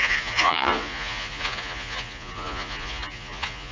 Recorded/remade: remade